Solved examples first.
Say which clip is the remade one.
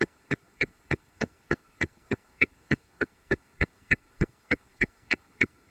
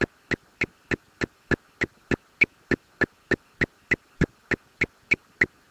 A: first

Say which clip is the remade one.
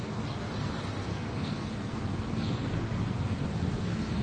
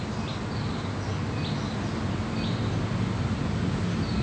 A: first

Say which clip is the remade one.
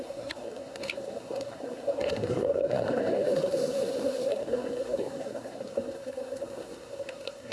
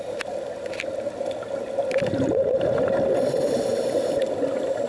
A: first